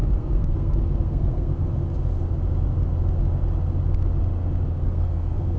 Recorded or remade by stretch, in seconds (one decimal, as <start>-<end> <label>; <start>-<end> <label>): 0.0-1.5 remade; 1.5-4.7 recorded; 4.7-5.6 remade